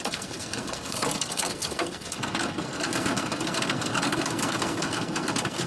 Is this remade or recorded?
remade